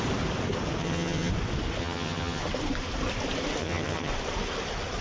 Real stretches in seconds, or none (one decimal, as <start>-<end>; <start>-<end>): 0.0-0.8; 1.3-1.8; 2.4-3.6; 4.1-5.0